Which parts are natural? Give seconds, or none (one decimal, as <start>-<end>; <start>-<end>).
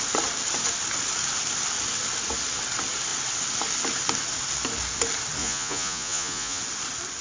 0.0-5.4; 6.6-7.2